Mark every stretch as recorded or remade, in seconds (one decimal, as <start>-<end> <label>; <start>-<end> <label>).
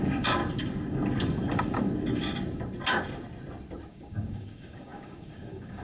0.0-0.4 remade; 0.4-3.9 recorded; 3.9-5.8 remade